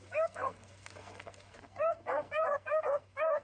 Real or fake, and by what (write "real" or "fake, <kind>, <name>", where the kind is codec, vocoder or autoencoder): fake, codec, SNAC